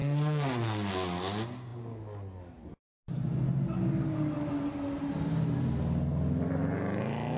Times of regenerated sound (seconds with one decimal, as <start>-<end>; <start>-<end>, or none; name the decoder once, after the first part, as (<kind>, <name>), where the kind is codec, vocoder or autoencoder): 0.0-0.9 (codec, SNAC)